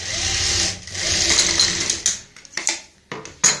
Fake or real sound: real